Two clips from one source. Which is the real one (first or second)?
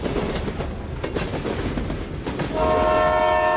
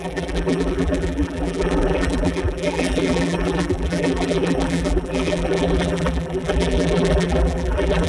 first